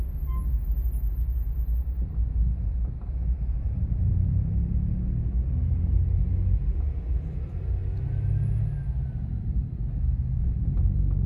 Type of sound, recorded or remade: recorded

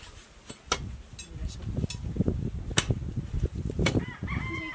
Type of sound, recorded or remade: recorded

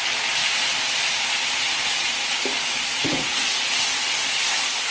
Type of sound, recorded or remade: recorded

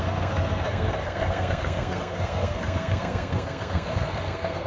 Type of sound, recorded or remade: remade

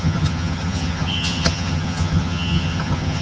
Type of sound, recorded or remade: remade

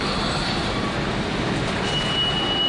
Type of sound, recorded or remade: recorded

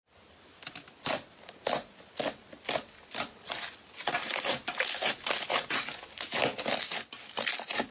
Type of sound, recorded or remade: recorded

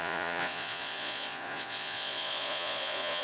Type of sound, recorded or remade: remade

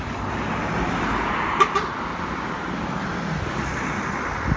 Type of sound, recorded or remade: recorded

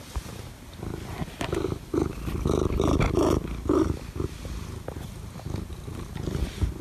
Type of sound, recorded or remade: recorded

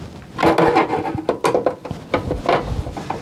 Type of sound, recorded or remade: recorded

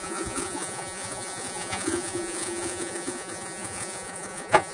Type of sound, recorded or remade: remade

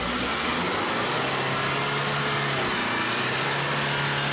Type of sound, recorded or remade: recorded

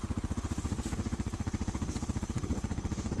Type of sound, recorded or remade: remade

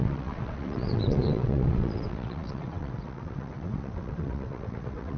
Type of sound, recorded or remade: remade